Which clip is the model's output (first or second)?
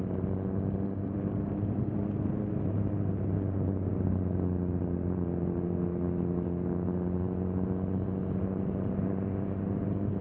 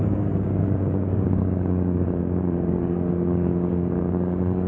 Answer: second